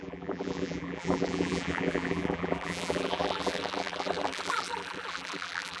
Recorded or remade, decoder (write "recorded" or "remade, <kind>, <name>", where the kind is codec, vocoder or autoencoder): remade, vocoder, BigVGAN v2